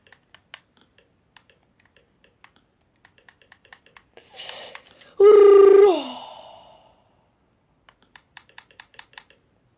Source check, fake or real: real